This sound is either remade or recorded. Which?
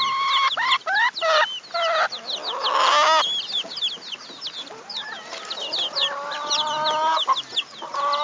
recorded